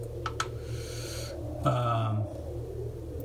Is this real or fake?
real